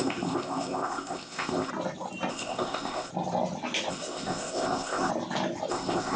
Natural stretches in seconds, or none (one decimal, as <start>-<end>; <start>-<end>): 1.7-2.3; 3.1-3.9; 5.1-5.7